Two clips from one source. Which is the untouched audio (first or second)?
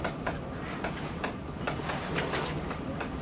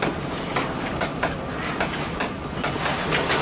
second